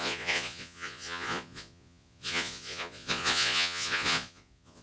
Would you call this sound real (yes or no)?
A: no